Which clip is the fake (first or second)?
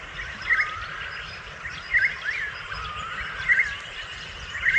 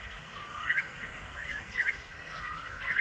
second